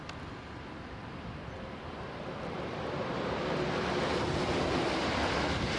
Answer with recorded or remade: recorded